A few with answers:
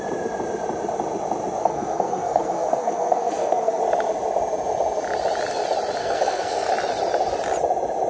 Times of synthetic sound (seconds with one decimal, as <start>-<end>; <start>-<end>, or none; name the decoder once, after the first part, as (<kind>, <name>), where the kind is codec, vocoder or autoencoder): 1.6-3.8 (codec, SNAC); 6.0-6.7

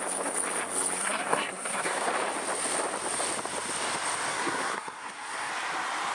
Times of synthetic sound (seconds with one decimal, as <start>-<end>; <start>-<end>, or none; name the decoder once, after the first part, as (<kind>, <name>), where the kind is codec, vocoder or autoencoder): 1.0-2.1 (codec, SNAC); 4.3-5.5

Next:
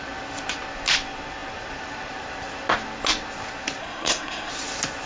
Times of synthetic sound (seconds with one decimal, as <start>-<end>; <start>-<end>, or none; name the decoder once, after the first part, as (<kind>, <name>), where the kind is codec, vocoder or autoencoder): 3.8-4.5 (codec, SNAC)

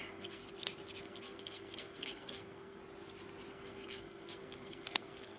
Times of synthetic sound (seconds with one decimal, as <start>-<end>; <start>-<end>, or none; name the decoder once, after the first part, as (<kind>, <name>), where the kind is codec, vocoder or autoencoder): 0.0-0.4 (codec, SNAC); 1.0-2.8; 3.5-5.4

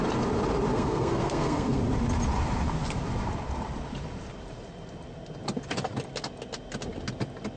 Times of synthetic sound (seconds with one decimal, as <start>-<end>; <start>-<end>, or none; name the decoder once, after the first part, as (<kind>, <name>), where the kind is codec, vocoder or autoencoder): 0.7-1.8 (codec, SNAC)

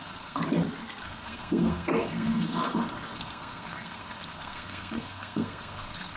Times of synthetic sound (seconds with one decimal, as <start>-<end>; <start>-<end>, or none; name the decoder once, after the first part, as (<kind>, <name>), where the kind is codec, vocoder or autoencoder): 0.0-0.4 (codec, SNAC); 1.0-6.2

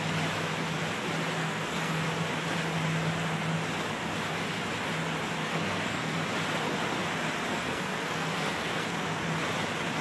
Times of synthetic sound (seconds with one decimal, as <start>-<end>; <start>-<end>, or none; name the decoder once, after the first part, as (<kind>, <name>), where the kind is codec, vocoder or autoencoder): 1.4-2.0 (codec, SNAC); 5.4-6.2; 7.5-9.3

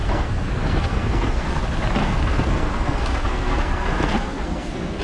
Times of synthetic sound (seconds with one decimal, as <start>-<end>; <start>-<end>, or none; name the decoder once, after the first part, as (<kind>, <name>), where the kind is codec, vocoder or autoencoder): 0.0-1.6 (codec, SNAC); 2.0-5.0